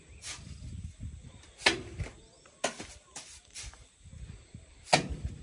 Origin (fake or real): real